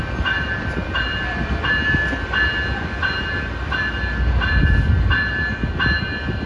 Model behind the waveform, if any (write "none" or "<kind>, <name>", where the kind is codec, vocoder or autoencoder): none